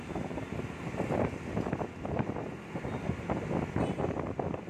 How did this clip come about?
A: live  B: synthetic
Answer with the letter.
A